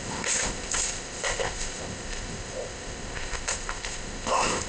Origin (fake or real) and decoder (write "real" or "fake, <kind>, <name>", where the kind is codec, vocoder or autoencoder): fake, codec, ZipCodec